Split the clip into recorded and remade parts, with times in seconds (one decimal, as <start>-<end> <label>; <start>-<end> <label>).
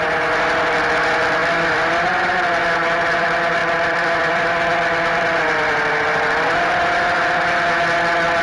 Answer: 0.0-3.6 recorded; 3.6-4.4 remade; 4.4-8.4 recorded